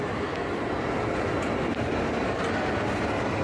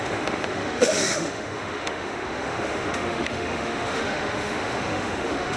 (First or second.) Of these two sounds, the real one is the first